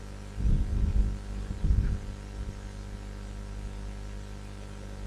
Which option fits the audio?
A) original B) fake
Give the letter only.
A